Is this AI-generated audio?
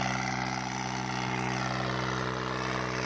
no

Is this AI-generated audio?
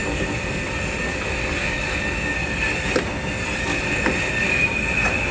no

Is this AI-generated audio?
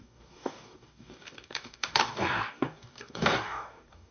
yes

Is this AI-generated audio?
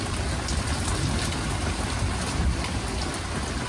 no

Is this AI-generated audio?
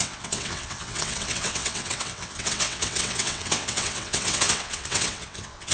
yes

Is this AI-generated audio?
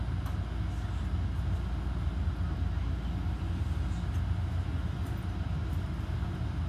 no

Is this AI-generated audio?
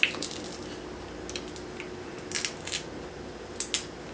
no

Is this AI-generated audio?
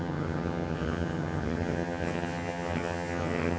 yes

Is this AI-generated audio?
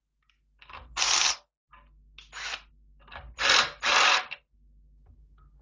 no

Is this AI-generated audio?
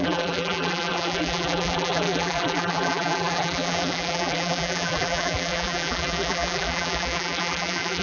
yes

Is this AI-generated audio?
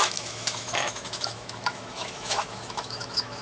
yes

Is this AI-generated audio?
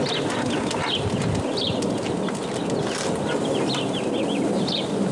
no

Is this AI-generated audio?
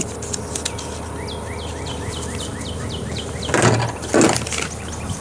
no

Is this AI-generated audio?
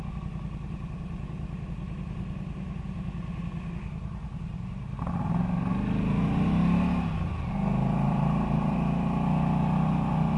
no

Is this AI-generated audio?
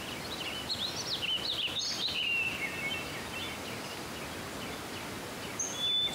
no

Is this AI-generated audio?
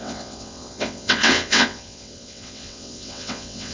yes